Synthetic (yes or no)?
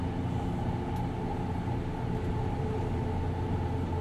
no